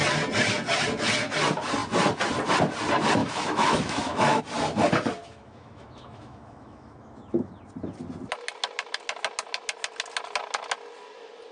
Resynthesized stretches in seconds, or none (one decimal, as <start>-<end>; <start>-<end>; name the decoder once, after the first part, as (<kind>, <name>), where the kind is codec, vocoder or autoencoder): 3.2-4.4 (autoencoder, DAC-VAE); 5.2-7.6